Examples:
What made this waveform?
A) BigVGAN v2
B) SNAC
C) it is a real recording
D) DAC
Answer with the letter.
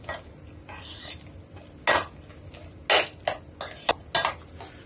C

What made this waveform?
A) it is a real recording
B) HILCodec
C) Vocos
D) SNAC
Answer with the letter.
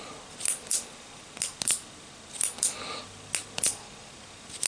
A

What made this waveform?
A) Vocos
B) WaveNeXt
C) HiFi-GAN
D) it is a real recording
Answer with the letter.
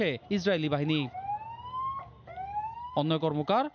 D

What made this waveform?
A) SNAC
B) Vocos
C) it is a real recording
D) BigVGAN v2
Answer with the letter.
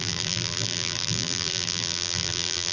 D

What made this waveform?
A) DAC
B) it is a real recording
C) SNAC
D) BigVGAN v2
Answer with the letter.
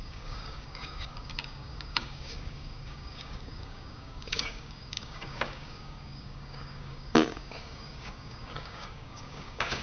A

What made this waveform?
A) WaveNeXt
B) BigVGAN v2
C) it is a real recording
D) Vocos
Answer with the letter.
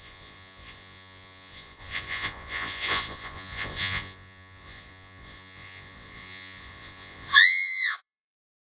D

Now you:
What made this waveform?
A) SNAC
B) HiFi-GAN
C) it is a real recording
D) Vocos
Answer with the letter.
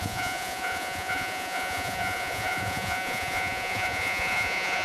D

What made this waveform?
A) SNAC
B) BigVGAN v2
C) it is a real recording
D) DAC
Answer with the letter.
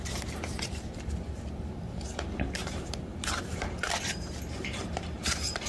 B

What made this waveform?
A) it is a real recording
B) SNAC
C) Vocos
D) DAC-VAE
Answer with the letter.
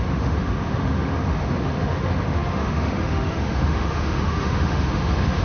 D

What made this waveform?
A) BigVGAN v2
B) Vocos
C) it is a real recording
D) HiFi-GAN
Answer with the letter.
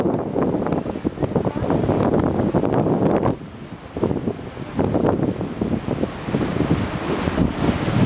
C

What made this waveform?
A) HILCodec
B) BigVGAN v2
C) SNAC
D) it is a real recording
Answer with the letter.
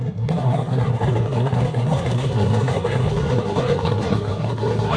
C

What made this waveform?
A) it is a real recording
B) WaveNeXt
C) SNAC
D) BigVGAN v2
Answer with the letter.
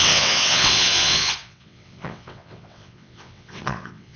B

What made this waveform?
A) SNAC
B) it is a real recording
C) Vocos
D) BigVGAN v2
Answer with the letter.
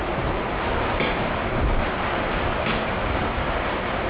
B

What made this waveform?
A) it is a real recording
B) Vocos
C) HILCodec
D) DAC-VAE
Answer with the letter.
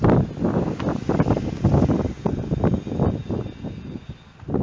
A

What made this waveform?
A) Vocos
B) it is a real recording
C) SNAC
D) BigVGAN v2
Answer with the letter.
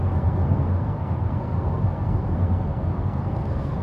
C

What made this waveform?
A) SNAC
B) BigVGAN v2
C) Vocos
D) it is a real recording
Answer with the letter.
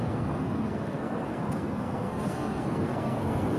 A